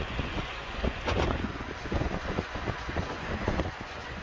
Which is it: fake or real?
fake